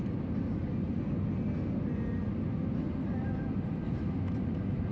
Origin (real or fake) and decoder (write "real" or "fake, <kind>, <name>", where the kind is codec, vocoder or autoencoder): real